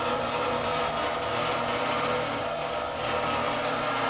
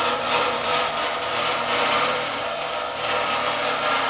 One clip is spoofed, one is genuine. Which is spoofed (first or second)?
second